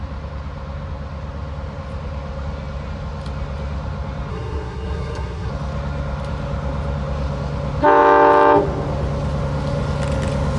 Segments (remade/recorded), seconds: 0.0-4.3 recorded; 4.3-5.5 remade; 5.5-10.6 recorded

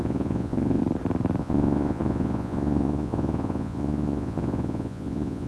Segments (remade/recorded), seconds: 0.0-0.8 remade; 0.8-1.4 recorded; 1.4-5.5 remade

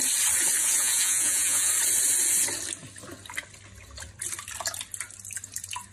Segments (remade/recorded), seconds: 0.0-0.6 recorded; 0.6-1.7 remade; 1.7-5.9 recorded

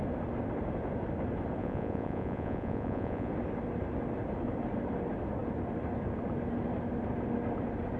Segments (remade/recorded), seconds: 0.0-1.6 recorded; 1.6-3.3 remade; 3.3-8.0 recorded

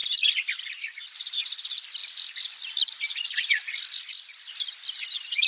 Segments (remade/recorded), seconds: 0.0-0.6 remade; 0.6-5.5 recorded

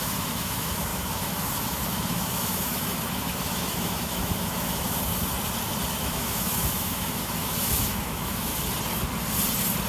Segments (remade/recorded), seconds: 0.0-5.1 remade; 5.1-6.0 recorded; 6.0-8.5 remade; 8.5-9.9 recorded

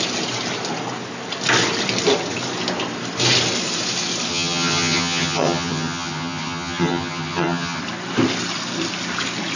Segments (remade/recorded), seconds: 0.0-4.3 recorded; 4.3-7.8 remade; 7.8-9.6 recorded